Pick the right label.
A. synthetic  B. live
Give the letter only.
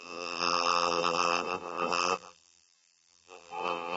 A